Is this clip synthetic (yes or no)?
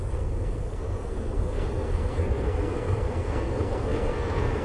yes